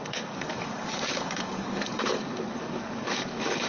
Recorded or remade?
remade